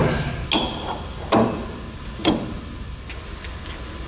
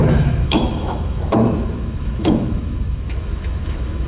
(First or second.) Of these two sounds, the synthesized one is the second